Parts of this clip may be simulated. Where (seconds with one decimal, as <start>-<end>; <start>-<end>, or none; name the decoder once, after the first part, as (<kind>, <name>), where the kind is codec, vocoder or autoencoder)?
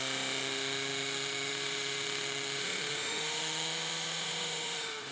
0.0-5.1 (autoencoder, DAC-VAE)